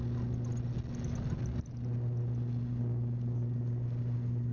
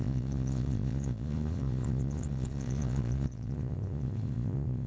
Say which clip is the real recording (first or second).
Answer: first